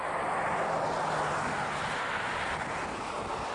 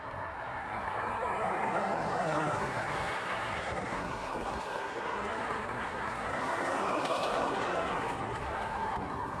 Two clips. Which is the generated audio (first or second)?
second